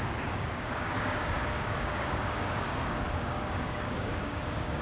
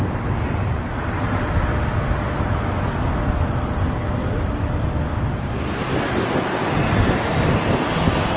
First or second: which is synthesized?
first